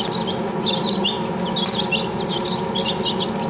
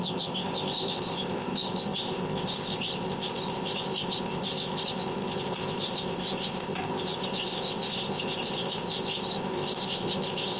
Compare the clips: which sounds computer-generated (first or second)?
second